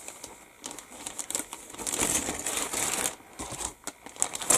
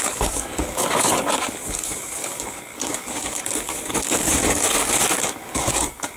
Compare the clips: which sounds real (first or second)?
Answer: first